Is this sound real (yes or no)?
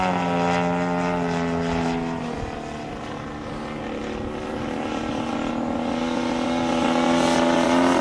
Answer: yes